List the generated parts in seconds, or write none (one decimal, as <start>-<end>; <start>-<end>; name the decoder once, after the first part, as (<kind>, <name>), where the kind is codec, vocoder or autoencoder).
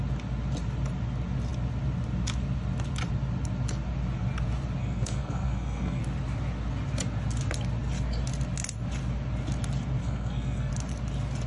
4.8-6.0 (codec, SNAC); 10.0-10.7